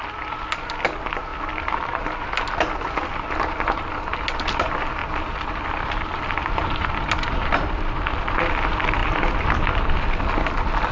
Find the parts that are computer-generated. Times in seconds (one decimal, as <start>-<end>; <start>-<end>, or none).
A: 1.3-2.4; 5.0-8.3; 9.0-10.0